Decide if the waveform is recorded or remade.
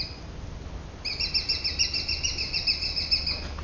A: recorded